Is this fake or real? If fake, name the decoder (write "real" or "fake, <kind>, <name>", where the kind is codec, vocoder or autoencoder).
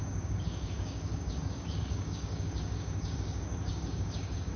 fake, codec, DAC